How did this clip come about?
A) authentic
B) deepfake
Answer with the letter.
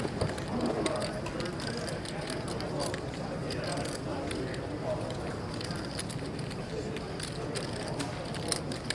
A